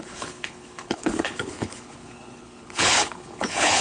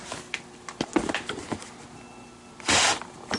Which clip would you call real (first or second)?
second